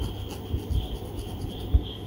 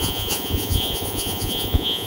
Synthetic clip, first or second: second